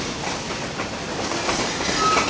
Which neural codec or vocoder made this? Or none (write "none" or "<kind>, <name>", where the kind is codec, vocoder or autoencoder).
none